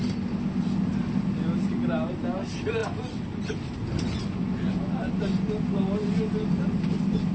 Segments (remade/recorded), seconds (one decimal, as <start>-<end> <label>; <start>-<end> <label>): 0.0-7.3 recorded